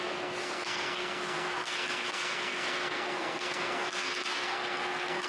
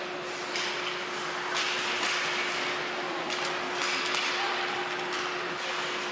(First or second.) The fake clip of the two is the first